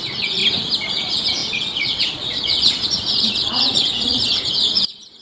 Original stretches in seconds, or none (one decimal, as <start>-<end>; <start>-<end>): 0.4-0.9